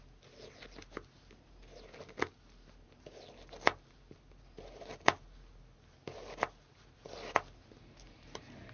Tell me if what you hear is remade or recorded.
recorded